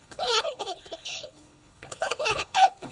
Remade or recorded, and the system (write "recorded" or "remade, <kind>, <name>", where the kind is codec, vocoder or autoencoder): remade, codec, HILCodec